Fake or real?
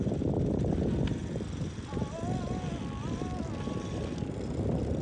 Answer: real